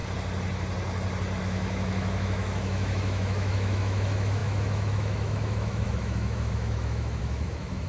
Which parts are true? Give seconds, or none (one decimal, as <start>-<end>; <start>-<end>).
0.0-1.4